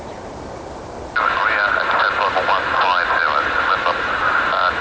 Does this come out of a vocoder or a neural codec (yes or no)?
no